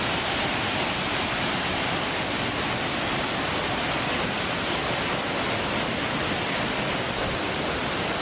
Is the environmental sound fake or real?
real